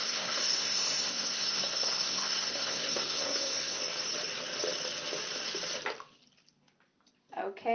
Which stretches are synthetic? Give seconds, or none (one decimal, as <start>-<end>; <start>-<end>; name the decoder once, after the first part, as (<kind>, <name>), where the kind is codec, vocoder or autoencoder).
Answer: 0.0-3.8 (codec, SNAC)